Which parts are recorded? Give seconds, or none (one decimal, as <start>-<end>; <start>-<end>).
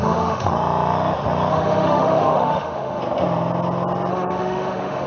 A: 0.5-1.5; 3.0-4.1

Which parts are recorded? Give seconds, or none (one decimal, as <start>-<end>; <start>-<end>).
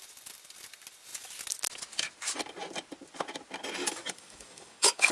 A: 0.0-3.8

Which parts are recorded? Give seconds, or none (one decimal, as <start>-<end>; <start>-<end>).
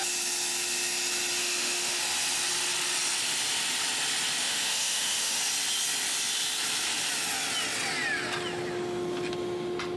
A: 0.0-1.4; 2.0-4.4; 5.4-10.0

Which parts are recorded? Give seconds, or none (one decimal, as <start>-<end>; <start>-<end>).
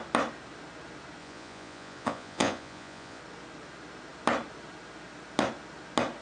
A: 0.0-1.2; 3.2-6.2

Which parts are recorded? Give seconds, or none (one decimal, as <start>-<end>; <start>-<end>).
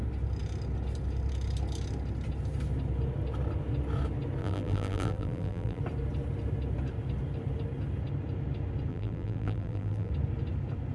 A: 0.0-4.4; 5.8-8.9; 10.1-10.9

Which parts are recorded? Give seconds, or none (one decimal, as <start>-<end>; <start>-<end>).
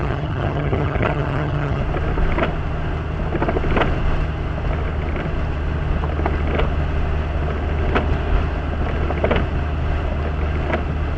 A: 1.8-11.2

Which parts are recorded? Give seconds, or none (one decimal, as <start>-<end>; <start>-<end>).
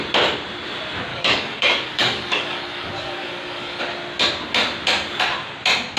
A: 0.0-1.1; 3.8-6.0